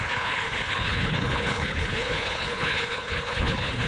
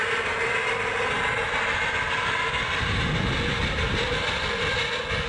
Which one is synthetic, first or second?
first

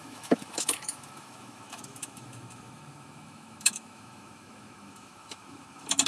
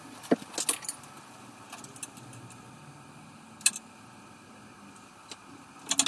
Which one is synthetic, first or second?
first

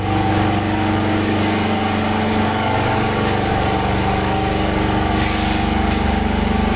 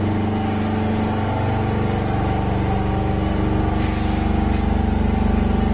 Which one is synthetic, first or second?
first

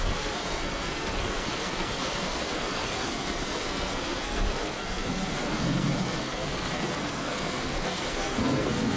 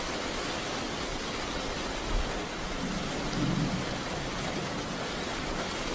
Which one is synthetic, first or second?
first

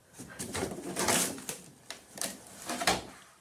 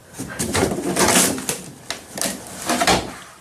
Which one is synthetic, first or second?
first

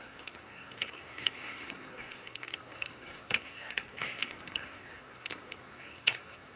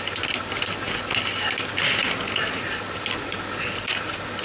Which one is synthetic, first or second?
first